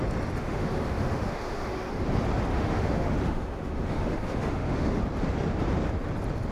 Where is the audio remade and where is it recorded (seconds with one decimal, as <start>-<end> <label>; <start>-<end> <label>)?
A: 0.0-0.4 recorded; 0.4-1.9 remade; 1.9-2.5 recorded; 2.5-5.0 remade; 5.0-6.5 recorded